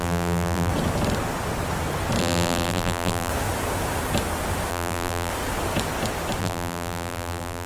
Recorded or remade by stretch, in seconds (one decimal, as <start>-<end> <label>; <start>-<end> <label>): 0.0-0.7 remade; 0.7-2.2 recorded; 2.2-3.3 remade; 3.3-4.7 recorded; 4.7-5.3 remade; 5.3-6.4 recorded; 6.4-7.7 remade